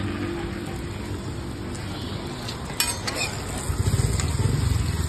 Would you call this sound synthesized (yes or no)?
no